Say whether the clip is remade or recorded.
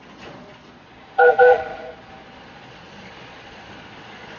remade